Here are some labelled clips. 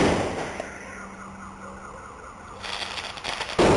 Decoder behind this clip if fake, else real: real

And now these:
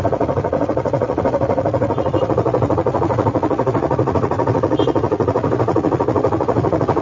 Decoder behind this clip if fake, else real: fake, vocoder, Vocos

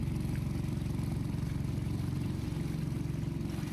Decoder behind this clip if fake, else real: real